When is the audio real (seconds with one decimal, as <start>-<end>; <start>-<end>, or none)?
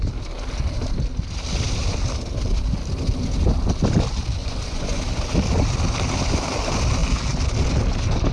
0.0-4.4; 5.0-8.3